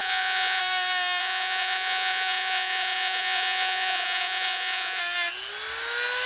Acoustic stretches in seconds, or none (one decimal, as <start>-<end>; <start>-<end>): 0.6-1.2; 5.0-6.3